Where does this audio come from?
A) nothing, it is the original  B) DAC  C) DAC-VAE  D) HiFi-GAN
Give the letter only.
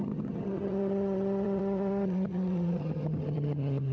D